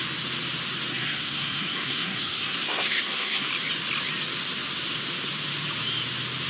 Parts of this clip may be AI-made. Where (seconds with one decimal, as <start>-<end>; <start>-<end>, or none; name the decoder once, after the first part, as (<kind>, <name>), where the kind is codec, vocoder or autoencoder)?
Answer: 0.9-3.5 (codec, SNAC)